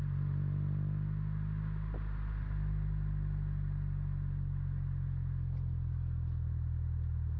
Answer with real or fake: real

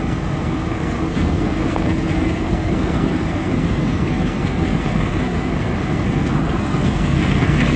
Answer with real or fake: fake